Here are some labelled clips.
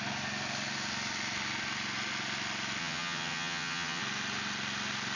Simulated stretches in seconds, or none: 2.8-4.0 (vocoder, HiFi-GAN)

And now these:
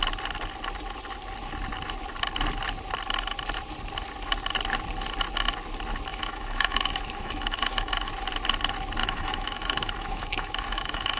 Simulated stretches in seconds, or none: 6.1-8.1 (autoencoder, DAC-VAE); 9.0-11.2